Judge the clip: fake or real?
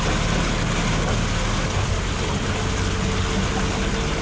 real